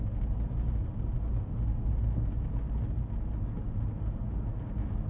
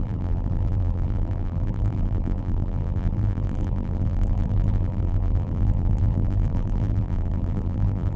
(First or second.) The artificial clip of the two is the second